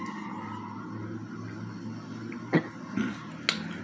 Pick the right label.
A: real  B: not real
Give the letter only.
A